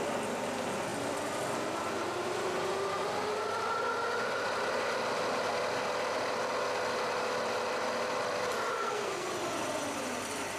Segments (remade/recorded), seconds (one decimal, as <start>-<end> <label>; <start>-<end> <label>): 0.0-8.7 recorded; 8.7-9.3 remade; 9.3-10.6 recorded